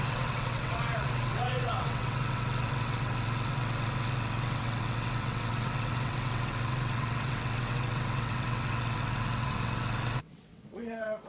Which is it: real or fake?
fake